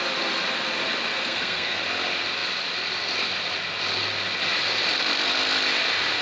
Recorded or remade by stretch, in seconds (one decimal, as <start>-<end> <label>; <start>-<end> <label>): 0.0-1.1 recorded; 1.1-1.8 remade; 1.8-6.2 recorded